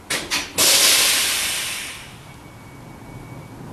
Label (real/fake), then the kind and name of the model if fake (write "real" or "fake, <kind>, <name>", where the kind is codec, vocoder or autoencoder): real